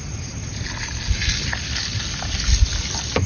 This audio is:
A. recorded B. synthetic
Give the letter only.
A